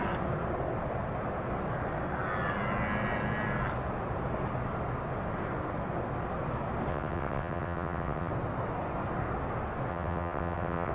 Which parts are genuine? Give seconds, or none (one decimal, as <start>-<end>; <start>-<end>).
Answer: 0.0-6.9; 8.3-9.9